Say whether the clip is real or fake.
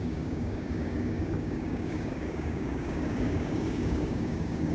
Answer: fake